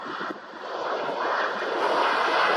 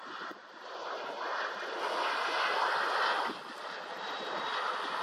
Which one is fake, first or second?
first